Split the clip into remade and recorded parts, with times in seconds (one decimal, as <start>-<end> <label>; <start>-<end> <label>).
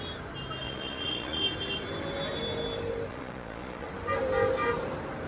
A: 0.0-0.6 recorded; 0.6-1.4 remade; 1.4-3.1 recorded; 3.1-3.9 remade; 3.9-5.3 recorded